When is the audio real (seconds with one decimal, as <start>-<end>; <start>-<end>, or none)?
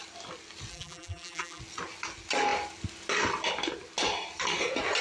0.0-0.7; 1.6-5.0